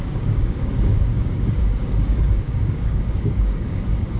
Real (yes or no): no